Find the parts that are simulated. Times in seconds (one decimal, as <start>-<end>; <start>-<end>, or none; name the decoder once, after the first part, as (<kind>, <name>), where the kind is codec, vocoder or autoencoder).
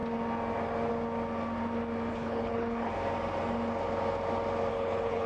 2.1-2.9 (codec, HILCodec); 4.7-5.3